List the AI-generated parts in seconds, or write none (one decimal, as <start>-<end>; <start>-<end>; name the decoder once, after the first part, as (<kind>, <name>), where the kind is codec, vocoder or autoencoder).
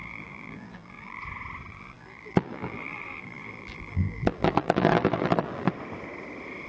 0.0-1.2 (vocoder, BigVGAN v2); 1.7-5.7